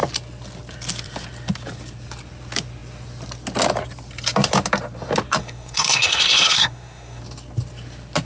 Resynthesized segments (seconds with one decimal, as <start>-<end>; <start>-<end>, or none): 5.4-7.2